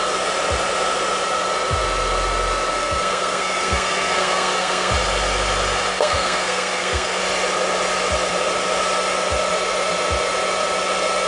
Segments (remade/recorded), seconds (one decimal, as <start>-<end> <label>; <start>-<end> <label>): 0.0-2.7 recorded; 2.7-4.9 remade; 4.9-5.9 recorded; 5.9-7.2 remade; 7.2-11.3 recorded